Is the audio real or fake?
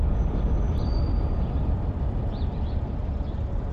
real